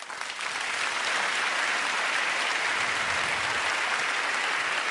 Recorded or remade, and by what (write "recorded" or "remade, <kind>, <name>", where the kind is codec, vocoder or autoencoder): recorded